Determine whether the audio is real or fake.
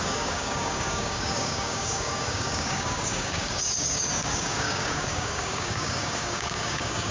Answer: fake